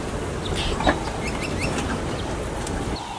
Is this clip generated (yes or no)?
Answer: no